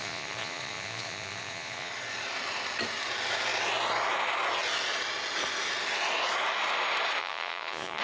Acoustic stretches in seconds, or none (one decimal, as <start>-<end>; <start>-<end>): 1.9-7.2

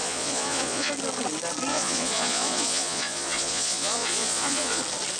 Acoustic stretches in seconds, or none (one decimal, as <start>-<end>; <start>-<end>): 0.9-1.7; 4.8-5.2